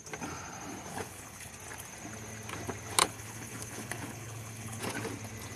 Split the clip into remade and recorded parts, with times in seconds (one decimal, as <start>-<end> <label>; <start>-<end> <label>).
0.0-0.9 recorded; 0.9-1.5 remade; 1.5-3.0 recorded; 3.0-4.8 remade; 4.8-5.6 recorded